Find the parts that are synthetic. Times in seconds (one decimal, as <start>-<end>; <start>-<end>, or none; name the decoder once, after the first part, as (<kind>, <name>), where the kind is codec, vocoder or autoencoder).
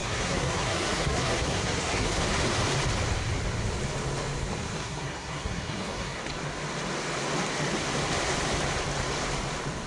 0.0-2.2 (codec, SNAC); 4.8-6.2